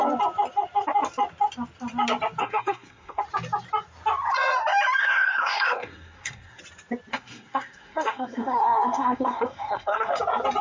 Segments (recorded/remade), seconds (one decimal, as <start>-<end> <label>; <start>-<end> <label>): 0.0-2.4 recorded; 2.4-3.2 remade; 3.2-5.0 recorded; 5.0-6.6 remade; 6.6-7.1 recorded; 7.1-10.2 remade; 10.2-10.6 recorded